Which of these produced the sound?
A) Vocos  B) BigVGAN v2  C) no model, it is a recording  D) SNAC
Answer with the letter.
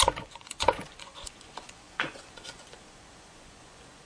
A